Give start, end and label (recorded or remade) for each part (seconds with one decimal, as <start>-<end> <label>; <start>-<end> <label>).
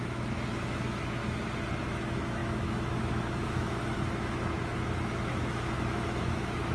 0.0-1.2 remade; 1.2-1.8 recorded; 1.8-6.7 remade